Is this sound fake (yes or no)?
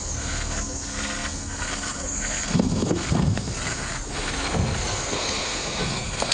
yes